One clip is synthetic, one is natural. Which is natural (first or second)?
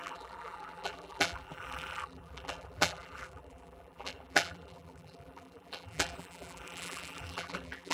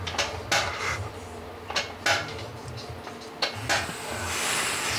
second